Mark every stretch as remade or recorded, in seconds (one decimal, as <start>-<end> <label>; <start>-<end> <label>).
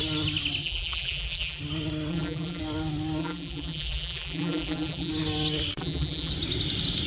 0.0-0.6 recorded; 0.6-1.6 remade; 1.6-2.1 recorded; 2.1-2.6 remade; 2.6-3.2 recorded; 3.2-5.1 remade; 5.1-5.8 recorded; 5.8-6.3 remade; 6.3-7.1 recorded